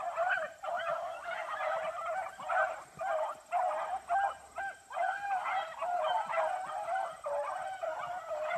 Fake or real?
real